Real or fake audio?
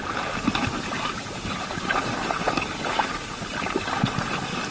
real